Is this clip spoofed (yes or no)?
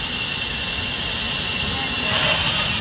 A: no